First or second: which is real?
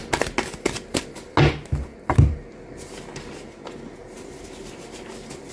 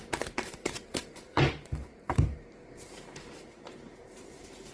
first